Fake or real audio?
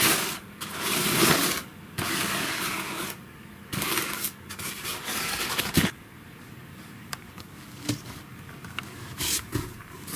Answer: fake